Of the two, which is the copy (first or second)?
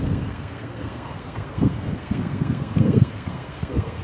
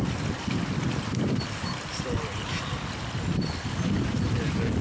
first